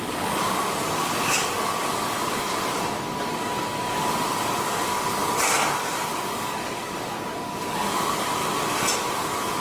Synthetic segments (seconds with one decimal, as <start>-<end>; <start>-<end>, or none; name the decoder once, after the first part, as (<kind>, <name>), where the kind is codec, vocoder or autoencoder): 0.0-8.4 (codec, DAC); 9.2-9.6